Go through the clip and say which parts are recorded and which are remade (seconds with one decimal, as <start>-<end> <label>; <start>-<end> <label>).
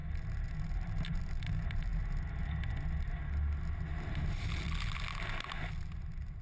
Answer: 0.0-6.4 recorded